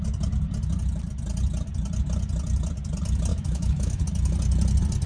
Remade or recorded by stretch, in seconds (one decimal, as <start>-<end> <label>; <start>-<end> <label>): 0.0-3.3 recorded; 3.3-4.0 remade; 4.0-5.1 recorded